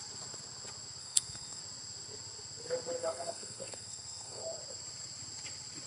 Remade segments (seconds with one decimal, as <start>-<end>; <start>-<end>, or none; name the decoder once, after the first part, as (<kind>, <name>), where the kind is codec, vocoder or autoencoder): 1.0-1.6 (codec, SNAC); 3.0-4.4